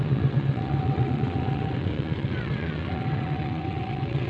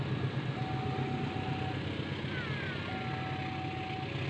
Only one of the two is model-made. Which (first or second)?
first